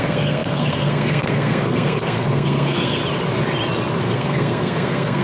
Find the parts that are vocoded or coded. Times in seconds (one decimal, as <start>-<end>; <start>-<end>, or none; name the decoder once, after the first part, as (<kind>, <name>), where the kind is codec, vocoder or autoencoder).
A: 0.0-3.0 (codec, SNAC); 4.0-5.2